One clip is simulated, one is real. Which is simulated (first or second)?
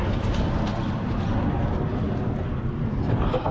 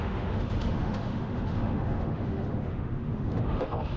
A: second